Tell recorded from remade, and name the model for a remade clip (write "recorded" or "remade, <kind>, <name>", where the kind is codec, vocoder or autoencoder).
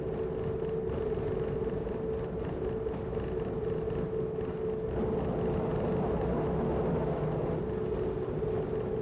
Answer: recorded